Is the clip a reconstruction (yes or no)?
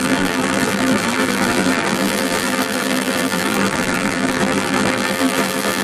yes